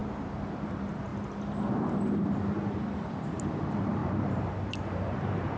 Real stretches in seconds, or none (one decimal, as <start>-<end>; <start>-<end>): 0.0-0.7; 1.1-3.6